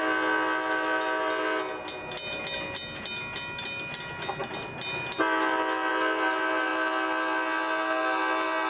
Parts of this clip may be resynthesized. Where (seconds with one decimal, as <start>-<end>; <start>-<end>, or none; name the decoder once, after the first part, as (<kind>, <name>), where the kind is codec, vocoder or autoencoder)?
none